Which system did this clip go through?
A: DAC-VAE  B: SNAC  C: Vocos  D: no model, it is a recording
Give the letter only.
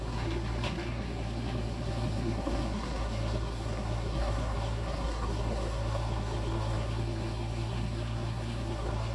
B